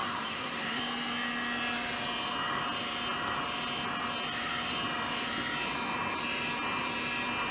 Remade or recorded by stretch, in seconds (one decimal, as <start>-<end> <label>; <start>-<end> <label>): 0.0-0.8 remade; 0.8-7.5 recorded